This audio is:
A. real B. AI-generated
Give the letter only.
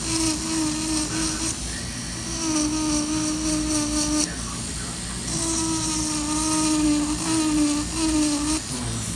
A